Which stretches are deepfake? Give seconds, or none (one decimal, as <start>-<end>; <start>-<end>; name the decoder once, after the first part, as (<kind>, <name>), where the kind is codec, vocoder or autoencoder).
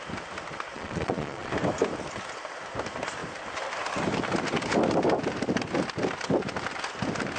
0.7-1.5 (vocoder, Vocos)